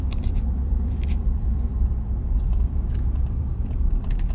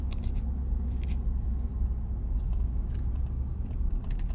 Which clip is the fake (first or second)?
first